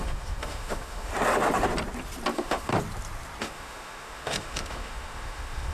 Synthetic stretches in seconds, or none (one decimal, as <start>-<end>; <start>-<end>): 0.0-1.1; 2.3-2.7; 3.4-5.7